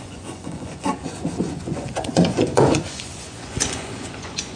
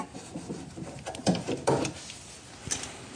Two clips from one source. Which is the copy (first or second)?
first